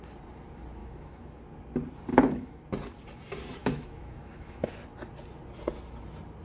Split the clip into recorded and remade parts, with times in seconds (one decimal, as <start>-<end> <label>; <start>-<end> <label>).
0.0-0.8 recorded; 0.8-1.4 remade; 1.4-2.1 recorded; 2.1-2.6 remade; 2.6-3.6 recorded; 3.6-4.7 remade; 4.7-6.4 recorded